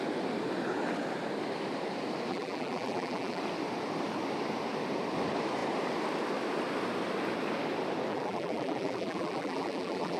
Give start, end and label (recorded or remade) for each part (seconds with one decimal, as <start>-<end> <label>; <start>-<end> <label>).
0.0-2.3 recorded; 2.3-3.4 remade; 3.4-8.1 recorded; 8.1-10.2 remade